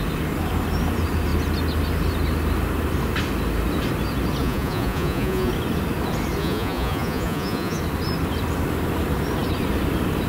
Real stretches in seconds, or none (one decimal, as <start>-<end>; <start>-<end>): 0.0-4.4; 5.5-6.4; 7.8-10.3